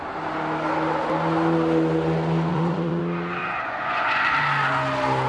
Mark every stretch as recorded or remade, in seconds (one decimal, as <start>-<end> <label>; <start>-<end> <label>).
0.0-2.5 recorded; 2.5-3.0 remade; 3.0-3.4 recorded; 3.4-4.2 remade; 4.2-5.3 recorded